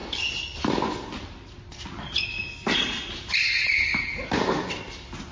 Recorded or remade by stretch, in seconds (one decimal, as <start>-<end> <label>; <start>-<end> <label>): 0.0-0.8 remade; 0.8-5.3 recorded